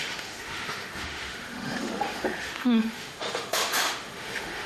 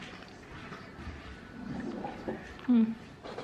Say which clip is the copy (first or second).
first